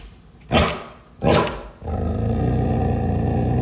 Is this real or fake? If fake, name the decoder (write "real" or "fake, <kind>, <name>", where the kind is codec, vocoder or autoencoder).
real